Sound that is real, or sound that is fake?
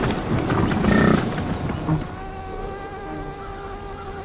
real